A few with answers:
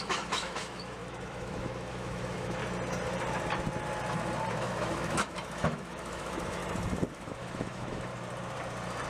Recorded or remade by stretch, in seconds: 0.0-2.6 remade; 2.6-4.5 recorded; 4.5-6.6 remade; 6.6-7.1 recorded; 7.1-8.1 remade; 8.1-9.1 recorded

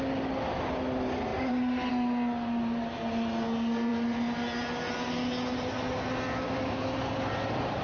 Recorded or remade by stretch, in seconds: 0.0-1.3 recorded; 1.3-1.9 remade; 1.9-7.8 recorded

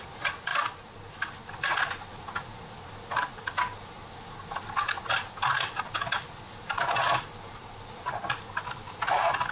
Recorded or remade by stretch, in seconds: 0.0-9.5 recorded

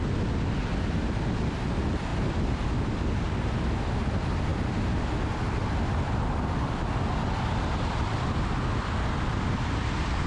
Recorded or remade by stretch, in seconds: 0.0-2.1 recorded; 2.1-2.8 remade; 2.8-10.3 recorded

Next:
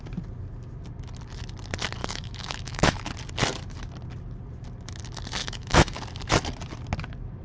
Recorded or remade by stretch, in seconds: 0.0-2.0 recorded; 2.0-3.1 remade; 3.1-5.4 recorded; 5.4-6.0 remade; 6.0-7.4 recorded

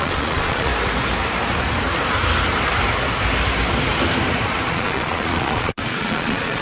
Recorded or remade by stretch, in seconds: 0.0-0.7 remade; 0.7-4.7 recorded; 4.7-6.6 remade

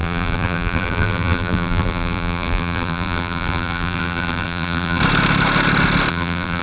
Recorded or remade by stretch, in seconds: 0.0-5.0 remade; 5.0-6.1 recorded; 6.1-6.6 remade